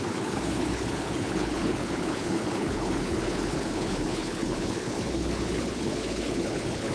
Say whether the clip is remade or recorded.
remade